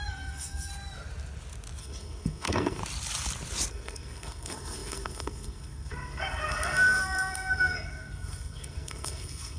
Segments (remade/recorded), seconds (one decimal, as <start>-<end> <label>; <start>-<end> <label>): 0.0-0.7 remade; 0.7-1.8 recorded; 1.8-2.8 remade; 2.8-3.7 recorded; 3.7-9.6 remade